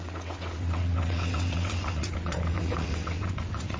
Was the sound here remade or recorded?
remade